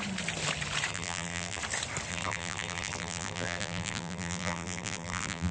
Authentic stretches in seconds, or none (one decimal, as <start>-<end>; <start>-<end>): 0.0-0.9; 1.6-2.1